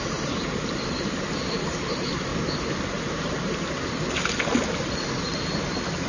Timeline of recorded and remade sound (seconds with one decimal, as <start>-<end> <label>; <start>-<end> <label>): 0.0-2.3 remade; 2.3-5.1 recorded; 5.1-6.1 remade